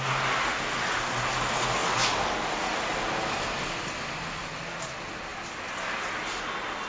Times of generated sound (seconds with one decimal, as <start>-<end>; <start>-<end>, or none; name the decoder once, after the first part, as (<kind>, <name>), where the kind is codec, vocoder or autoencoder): none